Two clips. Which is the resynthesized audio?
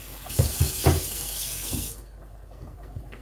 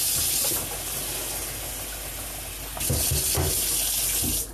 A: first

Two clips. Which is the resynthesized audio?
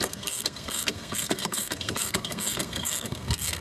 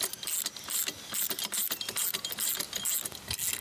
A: first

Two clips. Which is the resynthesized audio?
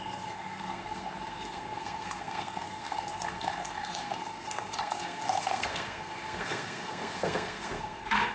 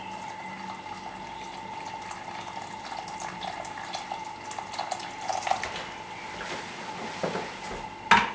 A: first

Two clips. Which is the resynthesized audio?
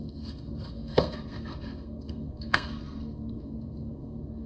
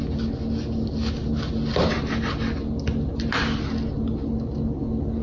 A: first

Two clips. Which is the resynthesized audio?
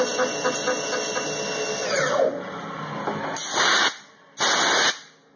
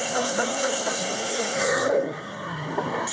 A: second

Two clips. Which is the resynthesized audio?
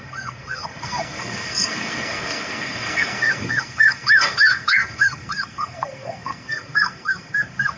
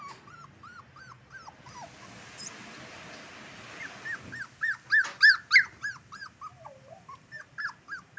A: first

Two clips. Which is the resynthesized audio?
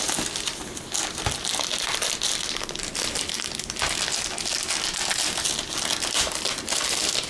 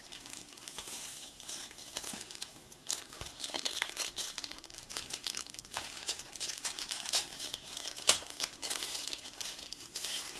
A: second